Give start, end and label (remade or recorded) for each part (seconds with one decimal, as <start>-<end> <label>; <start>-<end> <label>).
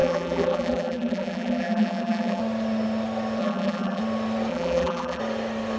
0.0-2.4 remade; 2.4-3.4 recorded; 3.4-4.0 remade; 4.0-4.5 recorded; 4.5-5.2 remade; 5.2-5.8 recorded